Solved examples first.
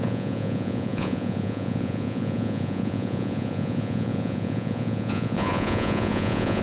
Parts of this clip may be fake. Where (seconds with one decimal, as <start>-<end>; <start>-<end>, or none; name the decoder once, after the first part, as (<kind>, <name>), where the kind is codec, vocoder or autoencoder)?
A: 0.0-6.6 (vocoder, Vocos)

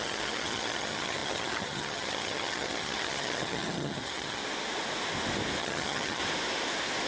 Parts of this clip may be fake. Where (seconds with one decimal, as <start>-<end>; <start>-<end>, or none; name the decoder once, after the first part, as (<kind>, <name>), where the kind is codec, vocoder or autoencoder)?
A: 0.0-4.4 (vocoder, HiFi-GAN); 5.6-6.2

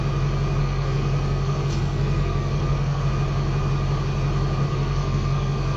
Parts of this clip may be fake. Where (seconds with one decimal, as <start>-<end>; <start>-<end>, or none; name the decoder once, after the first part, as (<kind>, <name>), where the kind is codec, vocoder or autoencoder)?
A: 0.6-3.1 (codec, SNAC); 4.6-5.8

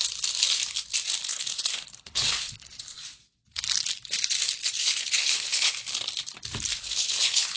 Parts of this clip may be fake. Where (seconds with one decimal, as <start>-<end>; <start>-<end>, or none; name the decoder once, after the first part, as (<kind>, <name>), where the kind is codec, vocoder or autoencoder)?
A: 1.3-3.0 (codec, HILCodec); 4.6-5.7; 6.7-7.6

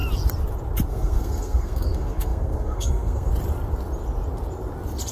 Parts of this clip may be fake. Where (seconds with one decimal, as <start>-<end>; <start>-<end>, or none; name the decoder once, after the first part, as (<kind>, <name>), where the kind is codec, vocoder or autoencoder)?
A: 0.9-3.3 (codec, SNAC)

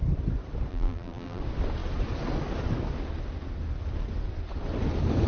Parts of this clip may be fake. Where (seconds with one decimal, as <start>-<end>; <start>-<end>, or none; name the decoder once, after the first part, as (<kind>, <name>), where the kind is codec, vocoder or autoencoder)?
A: 0.7-1.4 (vocoder, BigVGAN v2)

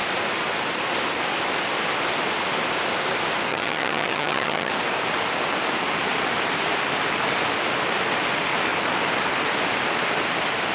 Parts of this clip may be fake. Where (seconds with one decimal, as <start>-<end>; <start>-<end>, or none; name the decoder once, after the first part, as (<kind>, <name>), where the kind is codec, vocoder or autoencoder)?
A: 3.5-4.7 (vocoder, HiFi-GAN)